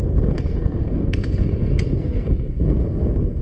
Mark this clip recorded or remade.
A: remade